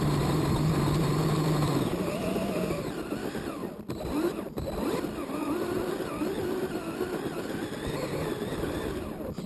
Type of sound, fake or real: fake